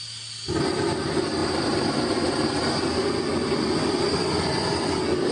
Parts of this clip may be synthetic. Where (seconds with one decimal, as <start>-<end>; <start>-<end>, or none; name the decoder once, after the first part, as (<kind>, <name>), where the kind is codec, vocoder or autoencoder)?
1.4-2.5 (vocoder, BigVGAN v2)